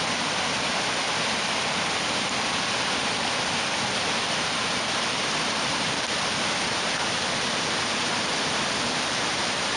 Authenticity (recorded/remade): remade